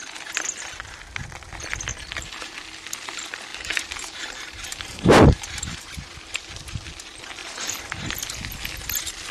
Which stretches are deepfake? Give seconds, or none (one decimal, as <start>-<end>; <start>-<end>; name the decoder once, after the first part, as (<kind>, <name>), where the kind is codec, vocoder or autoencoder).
1.9-2.6 (vocoder, BigVGAN v2); 3.5-5.9; 7.4-8.1